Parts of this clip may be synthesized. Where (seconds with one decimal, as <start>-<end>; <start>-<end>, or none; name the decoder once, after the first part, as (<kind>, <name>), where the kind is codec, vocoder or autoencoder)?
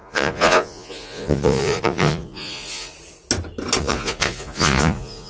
0.0-2.9 (vocoder, Vocos); 3.8-5.3